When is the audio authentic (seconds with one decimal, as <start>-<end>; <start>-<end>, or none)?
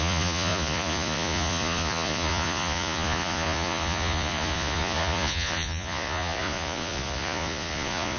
none